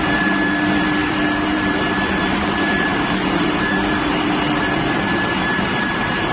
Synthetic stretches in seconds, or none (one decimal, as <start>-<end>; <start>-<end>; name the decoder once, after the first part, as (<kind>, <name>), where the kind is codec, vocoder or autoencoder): 0.0-6.3 (vocoder, BigVGAN v2)

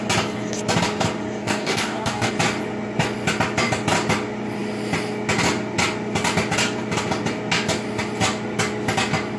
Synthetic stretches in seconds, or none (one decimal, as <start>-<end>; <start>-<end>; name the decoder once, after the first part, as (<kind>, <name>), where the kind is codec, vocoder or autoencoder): 1.4-2.3 (codec, DAC)

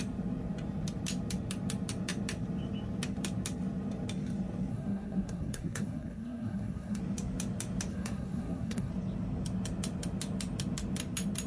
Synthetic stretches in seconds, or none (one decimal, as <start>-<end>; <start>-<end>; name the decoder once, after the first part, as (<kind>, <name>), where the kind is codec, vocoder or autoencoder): 4.7-7.0 (codec, SNAC); 7.9-8.9

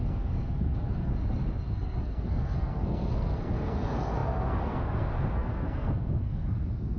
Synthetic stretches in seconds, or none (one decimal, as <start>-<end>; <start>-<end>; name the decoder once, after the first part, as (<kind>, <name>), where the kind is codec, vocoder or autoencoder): 0.0-1.1 (codec, SNAC); 1.7-7.0

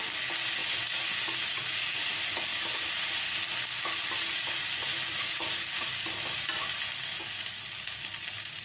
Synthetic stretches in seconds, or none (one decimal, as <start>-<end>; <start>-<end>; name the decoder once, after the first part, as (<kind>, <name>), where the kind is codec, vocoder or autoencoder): 0.0-0.6 (vocoder, BigVGAN v2); 1.6-2.5; 4.3-8.6